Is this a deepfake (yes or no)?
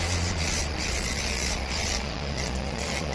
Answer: yes